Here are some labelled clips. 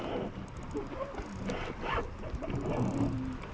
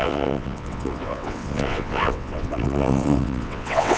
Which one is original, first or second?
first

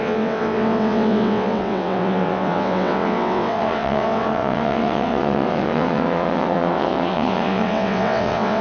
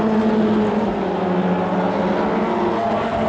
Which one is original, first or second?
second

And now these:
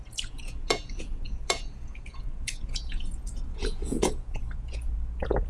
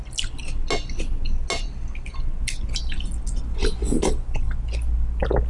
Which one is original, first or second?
second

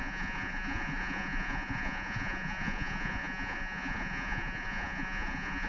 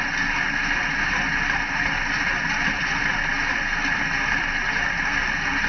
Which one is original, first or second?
second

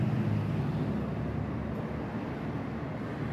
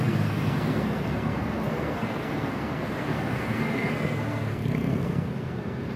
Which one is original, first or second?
first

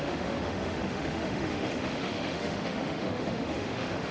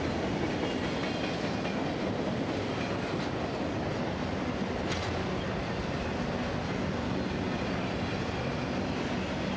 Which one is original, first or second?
second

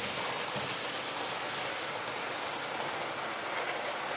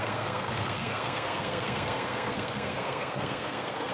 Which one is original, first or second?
first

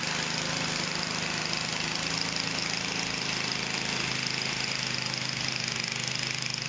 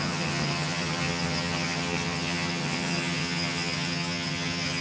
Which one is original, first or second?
first